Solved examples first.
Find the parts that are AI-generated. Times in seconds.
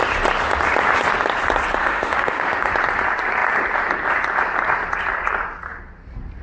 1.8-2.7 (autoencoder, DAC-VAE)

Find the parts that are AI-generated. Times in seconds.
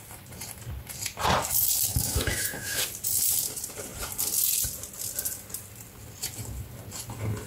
1.9-2.8 (autoencoder, DAC-VAE)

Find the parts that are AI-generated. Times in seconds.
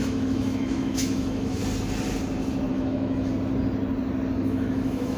0.0-1.6 (autoencoder, DAC-VAE); 2.7-3.3; 4.4-5.2